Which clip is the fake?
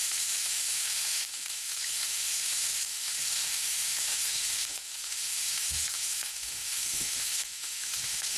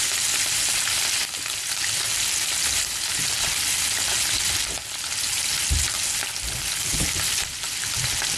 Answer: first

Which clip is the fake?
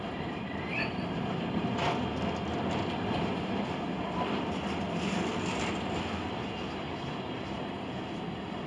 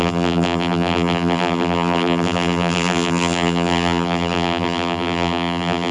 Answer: second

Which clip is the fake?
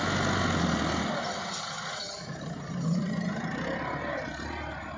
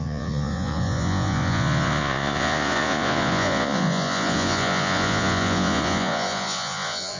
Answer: second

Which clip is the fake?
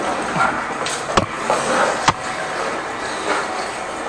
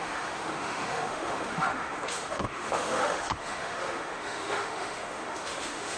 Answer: second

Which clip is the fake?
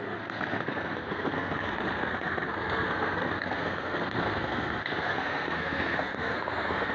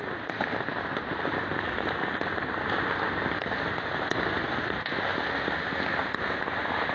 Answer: first